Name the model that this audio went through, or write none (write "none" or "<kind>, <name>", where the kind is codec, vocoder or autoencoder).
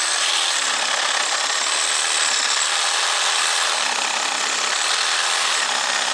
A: none